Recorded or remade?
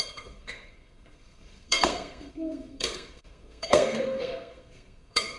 remade